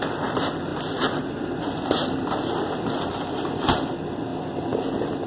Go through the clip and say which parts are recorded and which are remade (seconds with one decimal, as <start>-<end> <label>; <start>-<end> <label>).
0.0-5.3 recorded

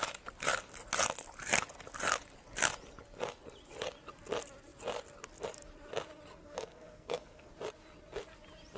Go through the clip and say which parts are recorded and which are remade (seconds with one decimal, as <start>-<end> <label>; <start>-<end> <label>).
0.0-6.4 recorded; 6.4-7.5 remade; 7.5-8.8 recorded

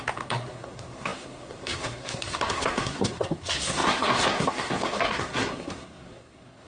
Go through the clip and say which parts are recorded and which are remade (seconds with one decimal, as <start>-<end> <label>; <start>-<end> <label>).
0.0-6.7 remade

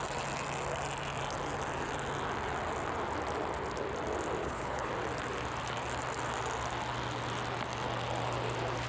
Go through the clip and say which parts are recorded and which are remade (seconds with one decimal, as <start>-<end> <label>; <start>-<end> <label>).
0.0-4.4 recorded; 4.4-4.9 remade; 4.9-8.9 recorded

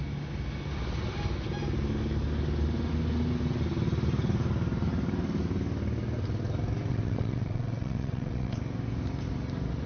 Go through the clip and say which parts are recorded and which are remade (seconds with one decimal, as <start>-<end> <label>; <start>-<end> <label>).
0.0-6.9 recorded; 6.9-8.6 remade; 8.6-9.9 recorded